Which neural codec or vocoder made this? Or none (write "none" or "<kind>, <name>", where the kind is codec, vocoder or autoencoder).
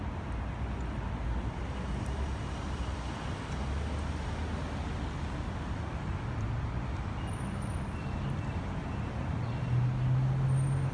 none